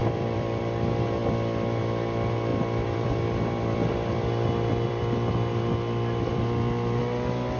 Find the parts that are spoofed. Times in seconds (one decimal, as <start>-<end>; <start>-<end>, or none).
0.0-0.6; 2.5-5.3; 6.3-7.0